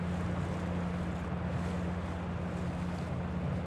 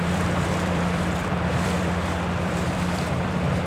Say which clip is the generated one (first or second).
second